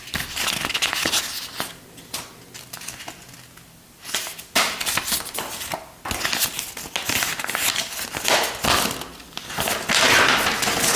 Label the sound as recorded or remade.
recorded